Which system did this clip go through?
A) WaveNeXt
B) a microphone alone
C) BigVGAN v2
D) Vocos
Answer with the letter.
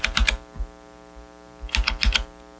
B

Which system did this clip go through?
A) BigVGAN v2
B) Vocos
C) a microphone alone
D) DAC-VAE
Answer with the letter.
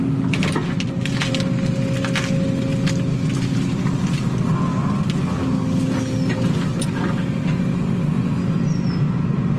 C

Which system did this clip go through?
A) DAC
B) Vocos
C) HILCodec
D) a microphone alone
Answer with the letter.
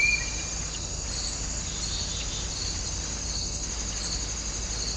D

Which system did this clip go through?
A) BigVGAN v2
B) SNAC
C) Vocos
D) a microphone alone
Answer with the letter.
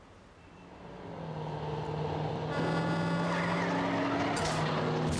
D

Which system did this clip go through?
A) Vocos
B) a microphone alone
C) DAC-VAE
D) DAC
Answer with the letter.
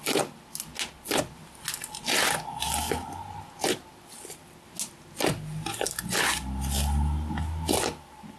B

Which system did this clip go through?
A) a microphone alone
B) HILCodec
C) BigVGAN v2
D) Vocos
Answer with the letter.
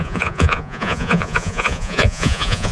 D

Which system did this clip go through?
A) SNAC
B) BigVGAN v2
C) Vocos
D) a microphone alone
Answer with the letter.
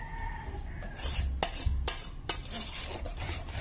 D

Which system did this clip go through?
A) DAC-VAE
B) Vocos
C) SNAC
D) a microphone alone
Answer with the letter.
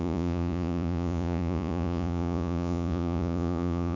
B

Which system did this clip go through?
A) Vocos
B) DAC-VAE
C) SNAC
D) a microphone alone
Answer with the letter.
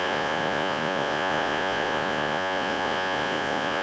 A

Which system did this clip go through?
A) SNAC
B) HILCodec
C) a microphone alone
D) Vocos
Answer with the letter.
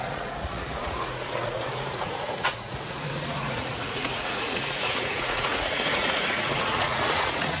D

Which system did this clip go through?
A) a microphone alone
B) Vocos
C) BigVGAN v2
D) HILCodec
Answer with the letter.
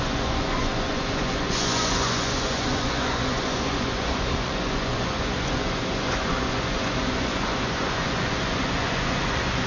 B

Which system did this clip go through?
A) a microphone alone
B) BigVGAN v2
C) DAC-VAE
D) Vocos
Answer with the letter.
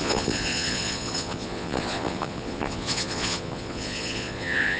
D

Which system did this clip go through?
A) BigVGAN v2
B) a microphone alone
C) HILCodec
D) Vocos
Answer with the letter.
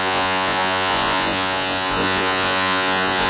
D